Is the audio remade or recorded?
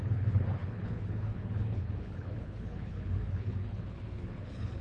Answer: remade